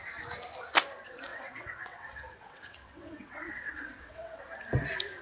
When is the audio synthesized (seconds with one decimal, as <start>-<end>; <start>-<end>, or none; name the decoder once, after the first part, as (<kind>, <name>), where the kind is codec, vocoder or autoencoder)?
1.3-4.4 (vocoder, WaveNeXt)